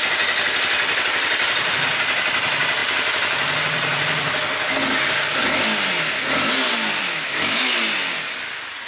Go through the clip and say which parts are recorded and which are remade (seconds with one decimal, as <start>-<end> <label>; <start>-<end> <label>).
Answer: 0.0-7.0 recorded; 7.0-7.8 remade; 7.8-8.9 recorded